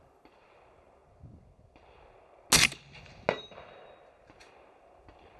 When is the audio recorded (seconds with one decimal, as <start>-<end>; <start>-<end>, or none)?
1.0-4.2

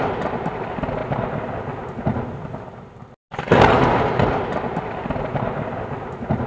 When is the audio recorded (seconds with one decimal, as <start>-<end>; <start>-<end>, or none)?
0.0-6.5

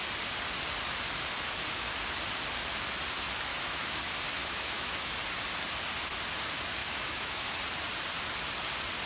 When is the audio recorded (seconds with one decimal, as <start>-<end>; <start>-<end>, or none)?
0.0-3.5; 4.0-4.4; 5.1-6.8; 7.6-9.1

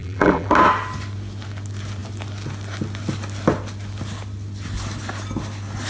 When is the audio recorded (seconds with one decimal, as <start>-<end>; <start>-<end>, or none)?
0.5-5.9

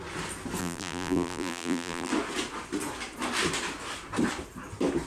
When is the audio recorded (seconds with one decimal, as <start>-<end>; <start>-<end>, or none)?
0.0-0.6; 2.1-5.1

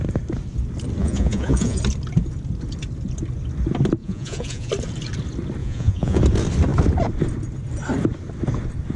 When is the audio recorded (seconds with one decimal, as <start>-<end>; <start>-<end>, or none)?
0.0-1.0; 1.8-4.0; 4.7-5.6; 6.2-9.0

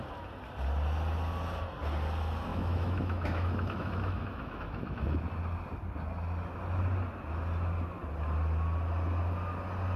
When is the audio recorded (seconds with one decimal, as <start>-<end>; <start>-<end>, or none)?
0.0-2.5; 5.3-10.0

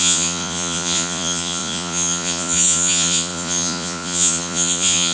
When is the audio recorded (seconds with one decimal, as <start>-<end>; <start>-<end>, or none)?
none